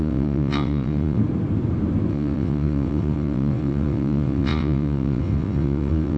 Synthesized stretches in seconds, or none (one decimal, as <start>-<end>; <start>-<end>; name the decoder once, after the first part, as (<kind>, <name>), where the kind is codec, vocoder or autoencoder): 0.0-1.2 (vocoder, WaveNeXt); 2.1-6.2